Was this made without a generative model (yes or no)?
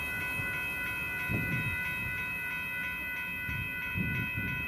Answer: yes